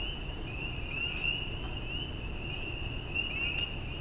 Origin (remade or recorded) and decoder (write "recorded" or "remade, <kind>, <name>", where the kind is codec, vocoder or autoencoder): recorded